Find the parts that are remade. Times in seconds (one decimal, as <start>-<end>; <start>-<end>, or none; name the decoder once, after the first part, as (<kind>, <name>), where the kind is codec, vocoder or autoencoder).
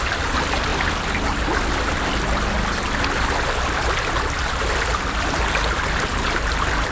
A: none